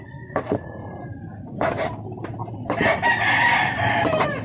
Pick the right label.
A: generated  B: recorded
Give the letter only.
A